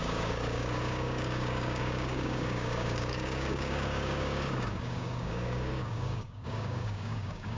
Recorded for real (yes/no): no